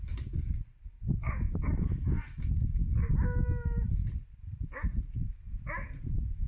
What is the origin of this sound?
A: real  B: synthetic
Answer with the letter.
A